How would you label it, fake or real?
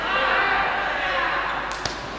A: real